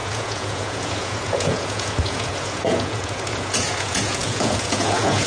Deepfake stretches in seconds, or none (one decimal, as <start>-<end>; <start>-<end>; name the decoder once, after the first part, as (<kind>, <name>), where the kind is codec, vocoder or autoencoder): 0.0-5.3 (vocoder, Vocos)